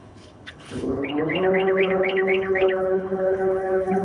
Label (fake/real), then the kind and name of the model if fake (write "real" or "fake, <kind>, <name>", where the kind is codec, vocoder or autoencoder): fake, codec, HILCodec